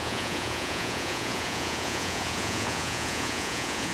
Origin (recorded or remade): remade